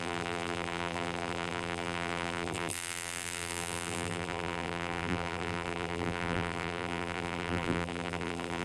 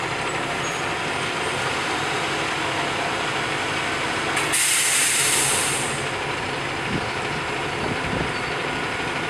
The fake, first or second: first